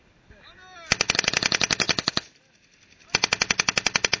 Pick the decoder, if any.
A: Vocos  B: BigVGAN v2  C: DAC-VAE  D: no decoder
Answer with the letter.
D